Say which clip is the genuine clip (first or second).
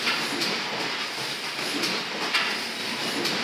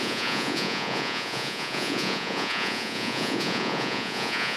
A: first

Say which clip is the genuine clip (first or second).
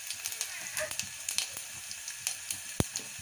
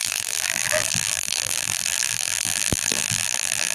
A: first